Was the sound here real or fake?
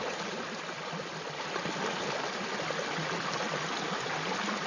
real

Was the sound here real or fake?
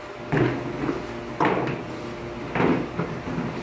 real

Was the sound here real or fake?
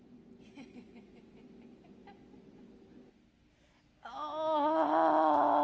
real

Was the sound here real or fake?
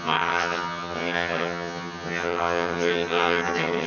fake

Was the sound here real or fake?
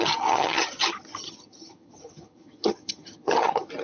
fake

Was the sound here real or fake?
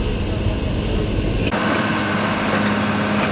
real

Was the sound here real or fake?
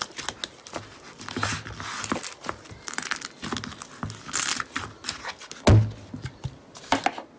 real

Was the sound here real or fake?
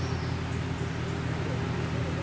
real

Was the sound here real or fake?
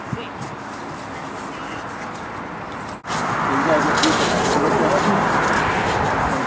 real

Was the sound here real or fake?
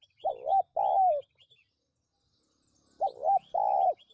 real